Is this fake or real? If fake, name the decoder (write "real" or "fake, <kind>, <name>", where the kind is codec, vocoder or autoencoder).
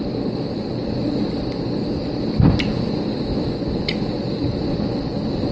real